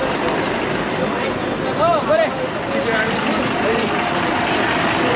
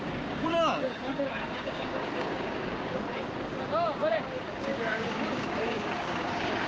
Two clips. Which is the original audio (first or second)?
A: first